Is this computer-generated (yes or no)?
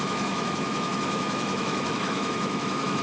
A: yes